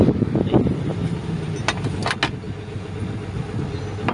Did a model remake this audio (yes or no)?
no